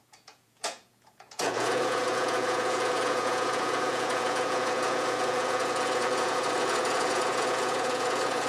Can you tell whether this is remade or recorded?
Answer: remade